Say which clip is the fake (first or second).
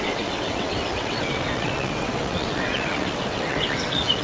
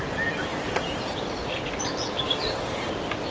first